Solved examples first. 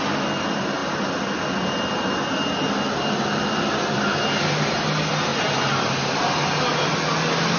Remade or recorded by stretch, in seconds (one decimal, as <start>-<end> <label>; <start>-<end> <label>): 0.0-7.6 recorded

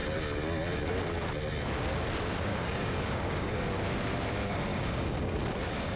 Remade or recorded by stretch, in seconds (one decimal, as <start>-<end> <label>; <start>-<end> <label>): 0.0-2.5 recorded; 2.5-3.5 remade; 3.5-4.7 recorded; 4.7-5.4 remade; 5.4-6.0 recorded

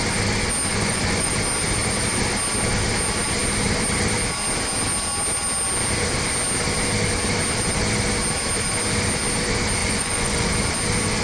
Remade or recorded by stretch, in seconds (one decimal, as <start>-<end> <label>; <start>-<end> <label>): 0.0-0.7 recorded; 0.7-1.3 remade; 1.3-9.8 recorded; 9.8-10.5 remade; 10.5-11.2 recorded

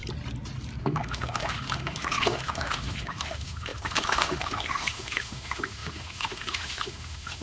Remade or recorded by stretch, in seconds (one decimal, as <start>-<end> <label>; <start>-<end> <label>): 0.0-0.8 recorded; 0.8-7.4 remade

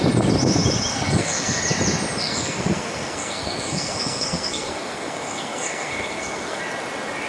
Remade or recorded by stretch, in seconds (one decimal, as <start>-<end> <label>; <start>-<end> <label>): 0.0-0.9 recorded; 0.9-1.6 remade; 1.6-2.2 recorded; 2.2-6.6 remade; 6.6-7.3 recorded

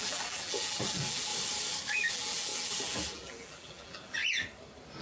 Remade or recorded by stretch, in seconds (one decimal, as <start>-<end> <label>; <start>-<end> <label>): 0.0-1.3 remade; 1.3-2.1 recorded; 2.1-4.2 remade; 4.2-5.0 recorded

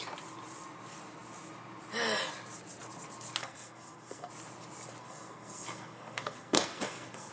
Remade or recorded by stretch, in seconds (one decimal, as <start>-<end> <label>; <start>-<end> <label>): 0.0-3.4 recorded; 3.4-4.3 remade; 4.3-5.0 recorded; 5.0-7.3 remade

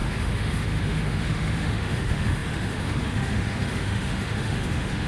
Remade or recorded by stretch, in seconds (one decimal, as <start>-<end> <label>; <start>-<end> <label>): 0.0-5.1 remade